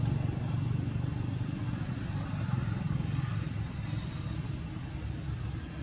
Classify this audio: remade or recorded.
recorded